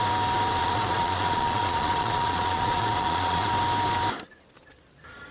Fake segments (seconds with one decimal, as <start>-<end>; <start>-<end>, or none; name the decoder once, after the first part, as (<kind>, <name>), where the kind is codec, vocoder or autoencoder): 0.6-3.5 (vocoder, Vocos)